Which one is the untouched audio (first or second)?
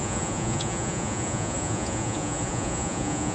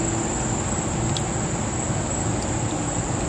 second